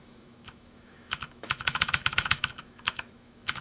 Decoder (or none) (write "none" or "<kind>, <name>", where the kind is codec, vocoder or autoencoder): autoencoder, DAC-VAE